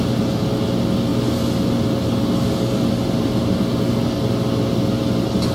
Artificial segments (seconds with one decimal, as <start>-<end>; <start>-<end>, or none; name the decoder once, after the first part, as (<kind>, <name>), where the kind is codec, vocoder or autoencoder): none